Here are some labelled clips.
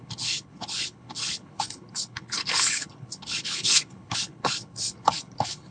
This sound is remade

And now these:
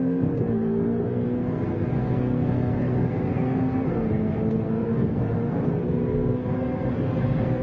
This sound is remade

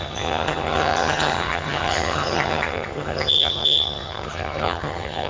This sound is remade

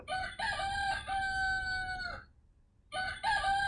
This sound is recorded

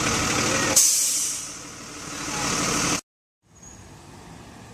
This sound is recorded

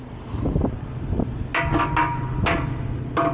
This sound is recorded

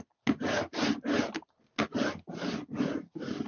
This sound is recorded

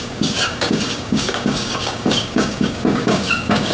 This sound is remade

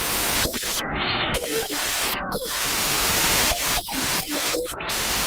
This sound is remade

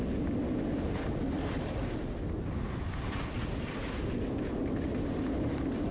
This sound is recorded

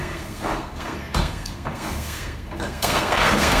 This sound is remade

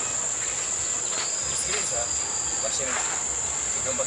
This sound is recorded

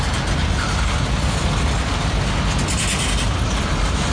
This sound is recorded